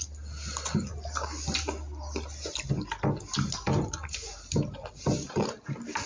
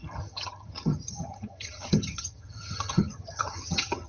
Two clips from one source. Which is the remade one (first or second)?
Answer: second